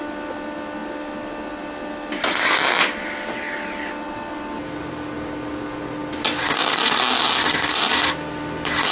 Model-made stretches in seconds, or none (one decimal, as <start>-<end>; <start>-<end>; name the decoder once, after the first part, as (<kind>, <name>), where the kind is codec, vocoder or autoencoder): none